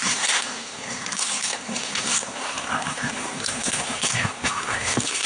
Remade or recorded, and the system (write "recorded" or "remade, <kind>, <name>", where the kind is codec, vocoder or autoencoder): remade, codec, SNAC